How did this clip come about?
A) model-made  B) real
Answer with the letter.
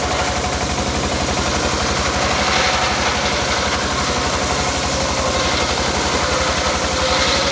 B